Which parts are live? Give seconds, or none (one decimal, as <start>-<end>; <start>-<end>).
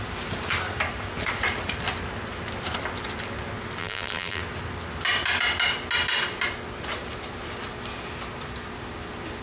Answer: 0.0-3.8; 4.4-9.4